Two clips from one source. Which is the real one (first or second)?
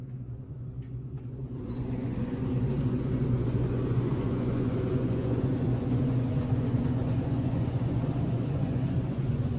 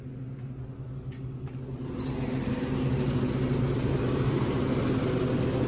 second